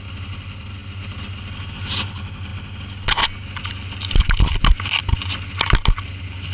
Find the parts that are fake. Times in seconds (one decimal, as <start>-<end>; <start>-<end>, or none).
none